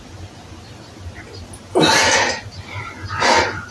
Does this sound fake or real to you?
real